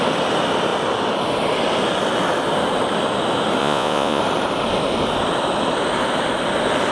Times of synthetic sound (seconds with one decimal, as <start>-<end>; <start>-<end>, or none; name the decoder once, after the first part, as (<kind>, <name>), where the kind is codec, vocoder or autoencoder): 3.6-4.2 (vocoder, Vocos)